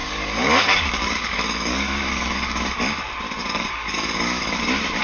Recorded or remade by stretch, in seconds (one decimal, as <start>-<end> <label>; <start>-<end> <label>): 0.0-3.0 remade; 3.0-3.4 recorded; 3.4-4.6 remade; 4.6-5.0 recorded